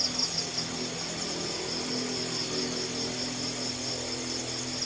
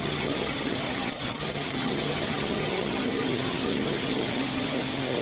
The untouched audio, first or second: first